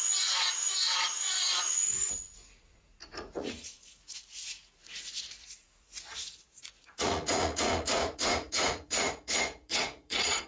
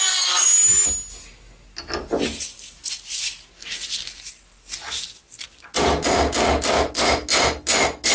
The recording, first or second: second